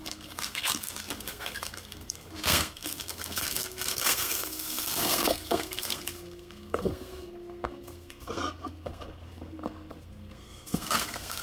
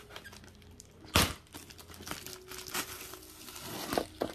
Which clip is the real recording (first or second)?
second